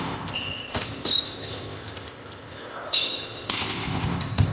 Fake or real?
fake